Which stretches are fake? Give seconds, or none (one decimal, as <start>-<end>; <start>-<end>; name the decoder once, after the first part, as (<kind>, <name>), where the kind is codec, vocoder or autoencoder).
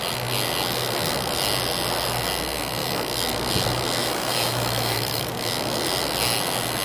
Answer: 4.0-5.3 (autoencoder, DAC-VAE)